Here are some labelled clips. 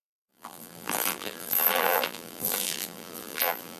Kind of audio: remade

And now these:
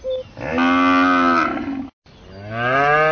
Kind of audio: recorded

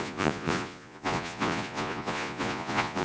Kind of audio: remade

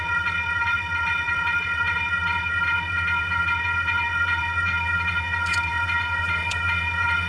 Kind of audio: remade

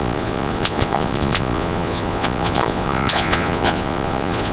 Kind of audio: remade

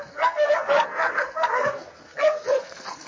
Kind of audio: remade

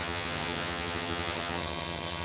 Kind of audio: remade